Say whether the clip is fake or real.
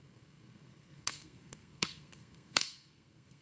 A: fake